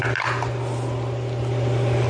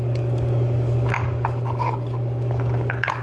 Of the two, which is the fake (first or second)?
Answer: second